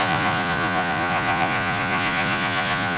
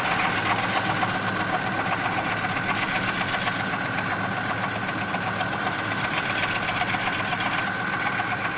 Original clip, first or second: second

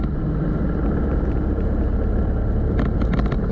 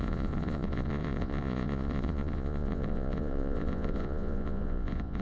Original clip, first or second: first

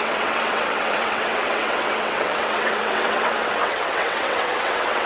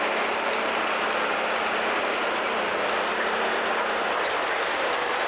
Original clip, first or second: second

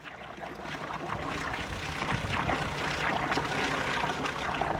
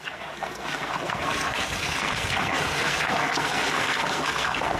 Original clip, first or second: first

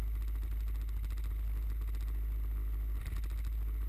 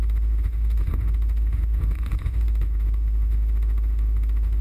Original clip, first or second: first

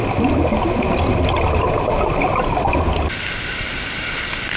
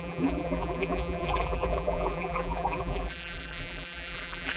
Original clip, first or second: first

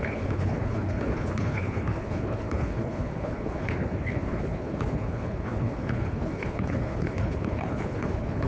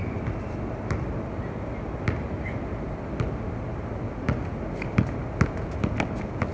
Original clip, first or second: second